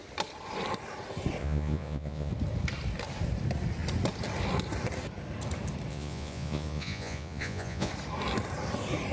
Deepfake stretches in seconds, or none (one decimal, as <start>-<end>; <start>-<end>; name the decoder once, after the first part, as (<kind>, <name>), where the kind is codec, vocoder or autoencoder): 1.4-2.3 (vocoder, Vocos); 5.9-7.9